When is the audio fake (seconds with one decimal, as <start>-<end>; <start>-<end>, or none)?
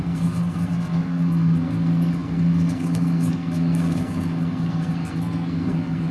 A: 0.0-6.1